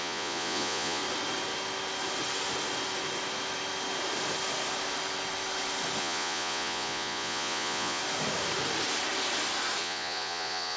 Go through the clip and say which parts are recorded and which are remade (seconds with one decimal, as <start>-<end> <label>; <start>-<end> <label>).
0.0-1.0 remade; 1.0-6.0 recorded; 6.0-8.0 remade; 8.0-9.8 recorded; 9.8-10.8 remade